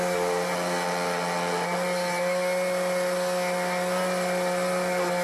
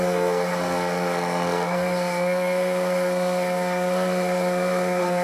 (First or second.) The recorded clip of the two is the first